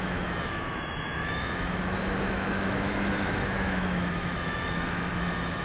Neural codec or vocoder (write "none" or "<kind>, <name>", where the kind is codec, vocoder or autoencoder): autoencoder, DAC-VAE